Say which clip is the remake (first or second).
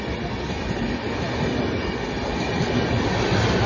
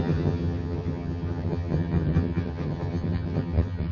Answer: second